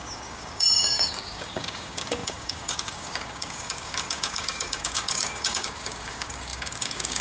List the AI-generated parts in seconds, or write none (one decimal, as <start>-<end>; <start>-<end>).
0.0-7.2